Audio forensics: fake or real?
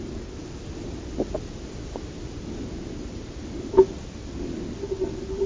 real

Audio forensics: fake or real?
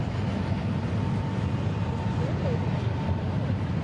real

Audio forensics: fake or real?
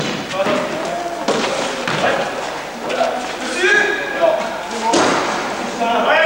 real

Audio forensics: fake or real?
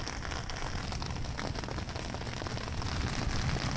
real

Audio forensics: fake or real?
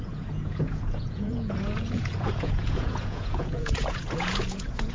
fake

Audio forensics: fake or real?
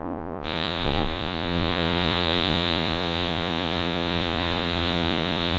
fake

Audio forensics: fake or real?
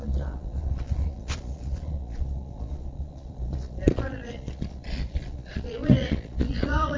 fake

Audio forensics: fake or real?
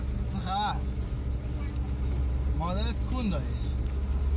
real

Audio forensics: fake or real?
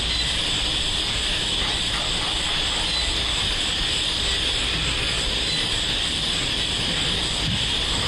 real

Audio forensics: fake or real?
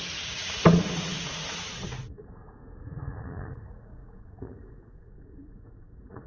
fake